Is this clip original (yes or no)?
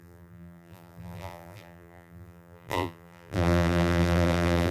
no